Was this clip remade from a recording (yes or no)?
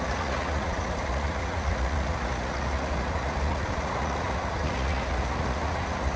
yes